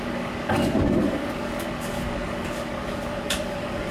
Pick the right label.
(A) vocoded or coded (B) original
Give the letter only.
A